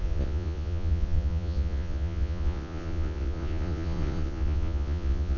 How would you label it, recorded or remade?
remade